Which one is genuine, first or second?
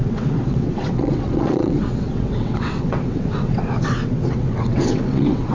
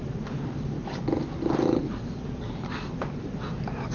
second